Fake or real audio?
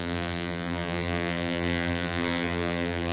fake